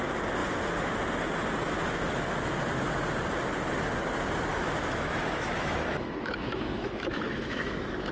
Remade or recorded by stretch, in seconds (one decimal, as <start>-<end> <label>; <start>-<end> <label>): 0.0-4.5 recorded; 4.5-8.1 remade